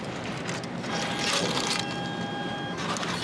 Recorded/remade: recorded